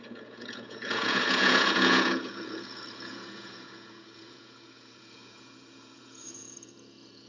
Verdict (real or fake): fake